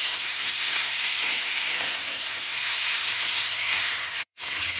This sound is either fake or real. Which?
fake